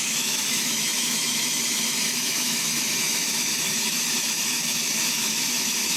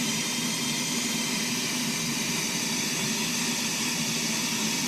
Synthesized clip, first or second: first